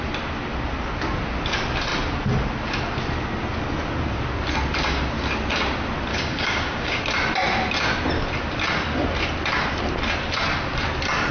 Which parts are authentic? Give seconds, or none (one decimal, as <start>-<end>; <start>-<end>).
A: 0.0-6.1; 7.0-11.3